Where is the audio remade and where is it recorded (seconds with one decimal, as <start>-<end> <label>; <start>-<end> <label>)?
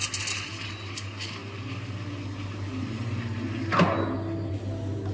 0.0-5.1 recorded